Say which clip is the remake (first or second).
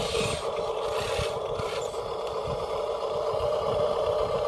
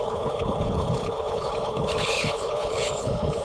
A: second